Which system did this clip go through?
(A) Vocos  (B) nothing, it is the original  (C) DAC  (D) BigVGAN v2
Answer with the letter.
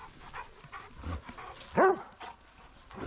B